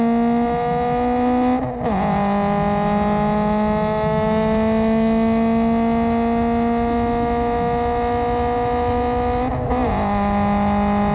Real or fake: real